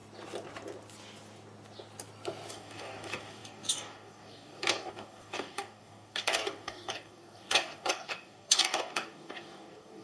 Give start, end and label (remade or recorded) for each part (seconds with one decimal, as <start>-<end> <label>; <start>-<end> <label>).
0.0-2.5 recorded; 2.5-10.0 remade